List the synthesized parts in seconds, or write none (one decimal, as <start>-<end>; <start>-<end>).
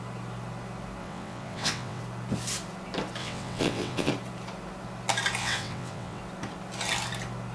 1.0-2.0; 3.2-4.1; 5.4-6.2